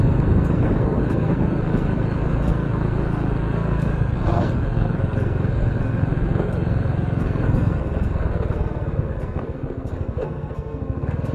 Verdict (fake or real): fake